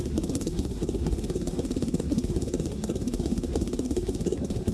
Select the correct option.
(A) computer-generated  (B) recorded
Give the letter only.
A